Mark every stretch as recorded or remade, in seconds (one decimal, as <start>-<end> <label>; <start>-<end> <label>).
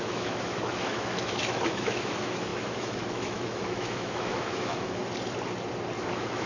0.0-5.0 remade; 5.0-6.1 recorded; 6.1-6.5 remade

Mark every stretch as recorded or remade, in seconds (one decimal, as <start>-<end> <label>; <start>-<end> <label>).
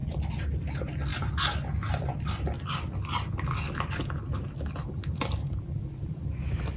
0.0-6.8 recorded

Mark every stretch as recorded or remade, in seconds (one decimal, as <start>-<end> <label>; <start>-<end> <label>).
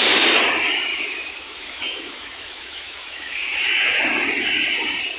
0.0-0.9 recorded; 0.9-4.0 remade; 4.0-5.2 recorded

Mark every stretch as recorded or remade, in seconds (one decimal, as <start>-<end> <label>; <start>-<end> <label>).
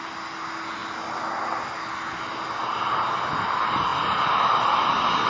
0.0-5.3 recorded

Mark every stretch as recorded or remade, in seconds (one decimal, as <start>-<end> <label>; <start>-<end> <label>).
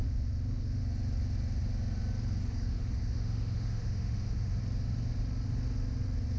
0.0-0.8 remade; 0.8-2.4 recorded; 2.4-4.6 remade; 4.6-6.4 recorded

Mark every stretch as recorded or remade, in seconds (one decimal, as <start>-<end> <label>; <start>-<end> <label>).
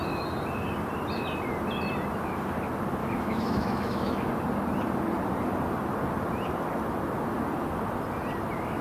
0.0-3.0 recorded; 3.0-4.3 remade; 4.3-8.8 recorded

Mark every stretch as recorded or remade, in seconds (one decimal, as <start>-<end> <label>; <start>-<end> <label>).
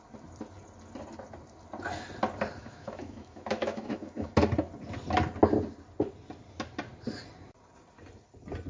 0.0-2.6 recorded; 2.6-4.3 remade; 4.3-8.7 recorded